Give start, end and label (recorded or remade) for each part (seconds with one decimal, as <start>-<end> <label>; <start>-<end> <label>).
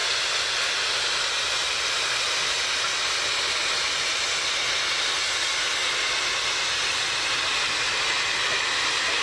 0.0-9.2 recorded